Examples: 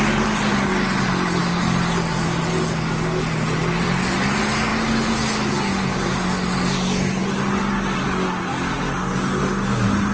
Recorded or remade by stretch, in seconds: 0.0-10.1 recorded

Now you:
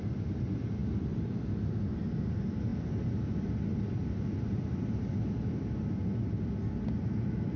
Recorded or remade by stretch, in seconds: 0.0-7.6 recorded

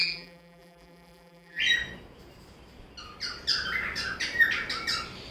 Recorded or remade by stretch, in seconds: 0.0-1.6 remade; 1.6-5.3 recorded

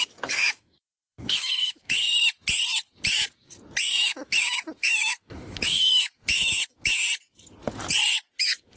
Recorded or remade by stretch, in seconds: 0.0-2.1 remade; 2.1-3.8 recorded; 3.8-6.9 remade; 6.9-8.4 recorded; 8.4-8.8 remade

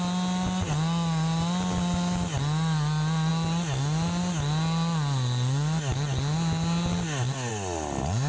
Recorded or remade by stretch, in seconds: 0.0-8.3 recorded

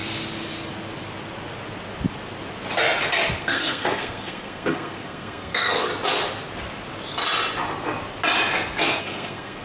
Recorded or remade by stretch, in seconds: 0.0-3.4 recorded; 3.4-5.9 remade; 5.9-9.0 recorded; 9.0-9.6 remade